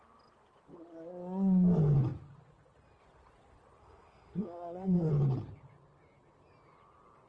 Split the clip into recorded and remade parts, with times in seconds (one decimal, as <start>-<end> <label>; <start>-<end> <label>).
0.0-3.8 recorded; 3.8-5.1 remade; 5.1-7.3 recorded